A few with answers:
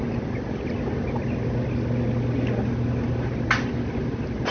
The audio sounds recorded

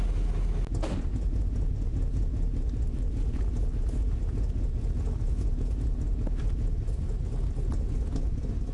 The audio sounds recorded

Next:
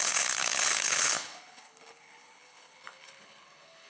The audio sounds remade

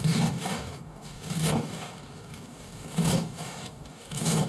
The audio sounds remade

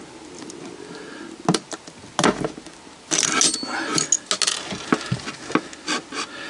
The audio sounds recorded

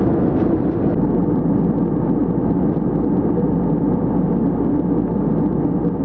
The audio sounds recorded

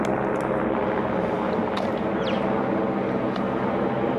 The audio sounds recorded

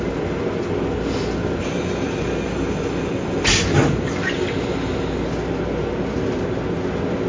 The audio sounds recorded